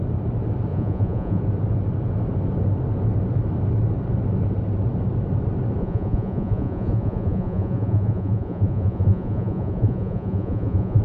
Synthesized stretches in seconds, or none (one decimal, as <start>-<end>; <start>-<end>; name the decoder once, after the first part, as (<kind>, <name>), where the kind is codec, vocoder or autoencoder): 0.7-1.4 (vocoder, Vocos); 5.8-11.0